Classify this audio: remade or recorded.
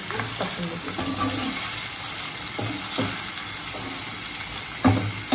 recorded